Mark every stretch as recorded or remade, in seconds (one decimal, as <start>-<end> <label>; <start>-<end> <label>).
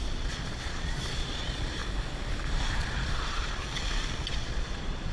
0.0-1.8 remade; 1.8-2.8 recorded; 2.8-3.6 remade; 3.6-4.3 recorded; 4.3-5.1 remade